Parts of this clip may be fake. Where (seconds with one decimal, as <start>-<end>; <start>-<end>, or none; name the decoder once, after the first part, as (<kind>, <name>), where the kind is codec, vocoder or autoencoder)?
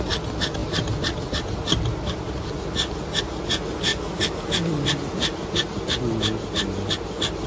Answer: none